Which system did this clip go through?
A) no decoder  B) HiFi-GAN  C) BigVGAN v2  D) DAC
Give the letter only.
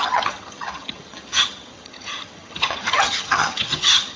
B